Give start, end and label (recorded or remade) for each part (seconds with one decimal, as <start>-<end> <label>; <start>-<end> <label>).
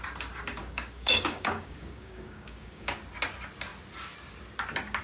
0.0-0.6 recorded; 0.6-3.0 remade; 3.0-5.0 recorded